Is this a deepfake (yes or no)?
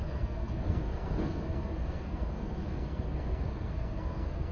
yes